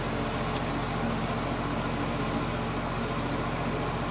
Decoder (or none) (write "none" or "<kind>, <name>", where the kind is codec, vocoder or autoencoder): none